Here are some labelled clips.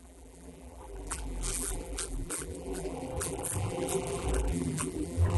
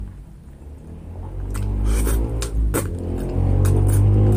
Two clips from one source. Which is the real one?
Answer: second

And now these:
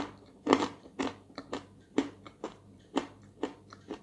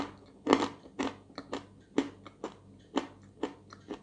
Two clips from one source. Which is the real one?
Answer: second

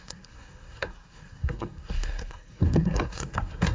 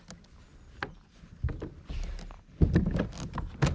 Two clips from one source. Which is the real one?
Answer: second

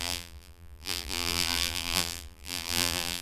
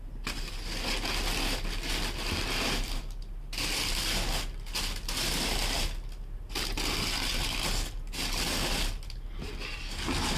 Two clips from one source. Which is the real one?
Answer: second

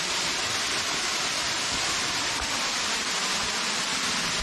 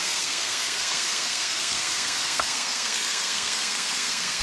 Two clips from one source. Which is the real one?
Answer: first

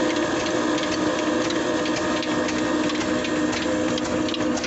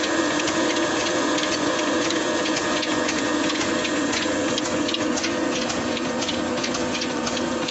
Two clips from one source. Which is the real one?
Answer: first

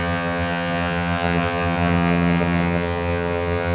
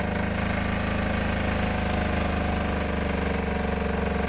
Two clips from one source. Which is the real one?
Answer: second